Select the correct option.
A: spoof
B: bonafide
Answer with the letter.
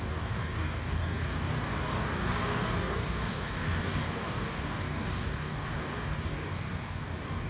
A